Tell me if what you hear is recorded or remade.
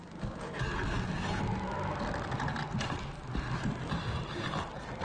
recorded